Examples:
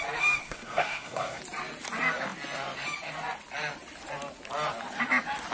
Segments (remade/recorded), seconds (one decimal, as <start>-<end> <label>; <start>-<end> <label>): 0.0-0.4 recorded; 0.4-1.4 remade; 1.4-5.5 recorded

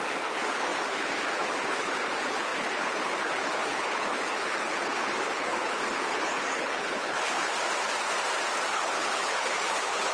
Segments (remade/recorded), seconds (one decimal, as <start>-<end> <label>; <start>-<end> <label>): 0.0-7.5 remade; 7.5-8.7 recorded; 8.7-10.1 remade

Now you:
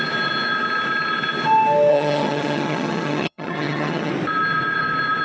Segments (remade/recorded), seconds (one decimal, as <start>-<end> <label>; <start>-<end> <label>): 0.0-1.9 recorded; 1.9-4.1 remade; 4.1-5.2 recorded